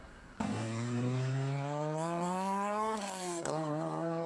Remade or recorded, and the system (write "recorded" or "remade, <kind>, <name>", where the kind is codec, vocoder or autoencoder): remade, codec, SNAC